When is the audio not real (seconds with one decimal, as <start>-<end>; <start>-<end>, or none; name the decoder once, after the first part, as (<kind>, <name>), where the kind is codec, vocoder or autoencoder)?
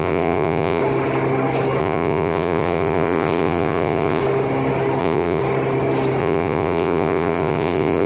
0.0-0.8 (vocoder, Vocos); 1.8-4.2; 5.0-5.4; 6.2-8.1